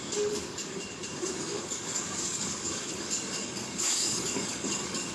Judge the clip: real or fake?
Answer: fake